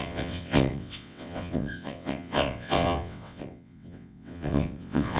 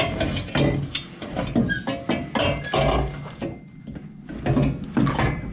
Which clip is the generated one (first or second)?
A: first